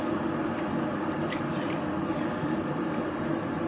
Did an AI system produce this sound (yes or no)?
no